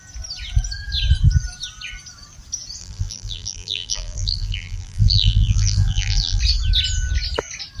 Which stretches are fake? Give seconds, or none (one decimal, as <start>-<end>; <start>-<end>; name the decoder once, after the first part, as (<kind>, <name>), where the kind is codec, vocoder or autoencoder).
2.8-6.4 (vocoder, BigVGAN v2)